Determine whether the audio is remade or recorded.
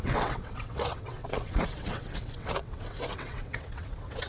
remade